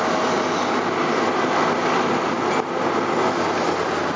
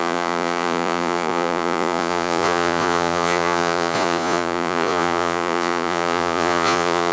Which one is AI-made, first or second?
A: second